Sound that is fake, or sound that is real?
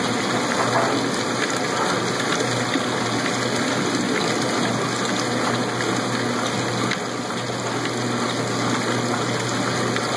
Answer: real